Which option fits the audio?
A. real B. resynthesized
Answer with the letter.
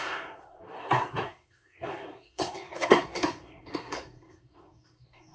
B